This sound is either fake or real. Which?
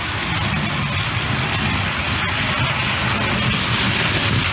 real